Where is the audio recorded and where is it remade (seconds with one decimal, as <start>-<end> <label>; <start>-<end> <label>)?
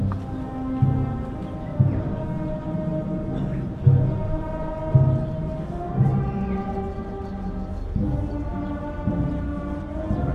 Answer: 0.0-10.3 recorded